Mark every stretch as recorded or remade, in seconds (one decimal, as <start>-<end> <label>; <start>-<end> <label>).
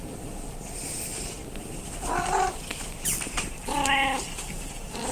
0.0-1.4 recorded; 1.4-4.5 remade; 4.5-5.1 recorded